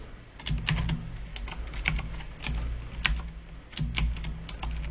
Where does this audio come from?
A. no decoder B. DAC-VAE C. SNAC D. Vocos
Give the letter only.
A